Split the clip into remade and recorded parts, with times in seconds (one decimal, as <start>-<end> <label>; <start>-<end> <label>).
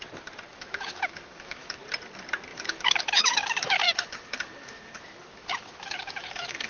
0.0-0.5 recorded; 0.5-1.8 remade; 1.8-2.5 recorded; 2.5-6.7 remade